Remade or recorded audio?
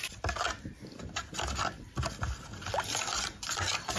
recorded